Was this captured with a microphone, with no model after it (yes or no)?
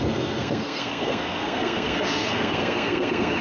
no